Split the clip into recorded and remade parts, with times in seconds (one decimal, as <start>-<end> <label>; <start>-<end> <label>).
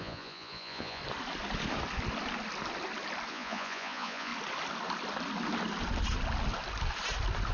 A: 0.0-1.0 remade; 1.0-3.3 recorded; 3.3-4.3 remade; 4.3-7.5 recorded